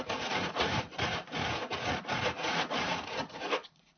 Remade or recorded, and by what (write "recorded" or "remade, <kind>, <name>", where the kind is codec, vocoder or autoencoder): remade, vocoder, Vocos